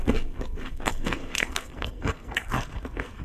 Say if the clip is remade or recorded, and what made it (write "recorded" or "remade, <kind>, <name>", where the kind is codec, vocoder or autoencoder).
remade, codec, SNAC